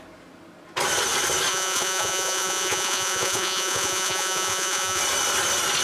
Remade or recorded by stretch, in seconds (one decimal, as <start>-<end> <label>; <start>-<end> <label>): 0.0-1.5 recorded; 1.5-5.0 remade; 5.0-5.8 recorded